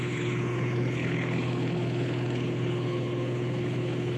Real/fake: fake